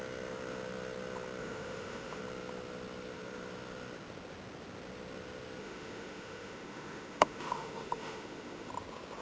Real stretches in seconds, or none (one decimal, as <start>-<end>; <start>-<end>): 0.0-1.4; 2.2-5.6; 8.7-9.2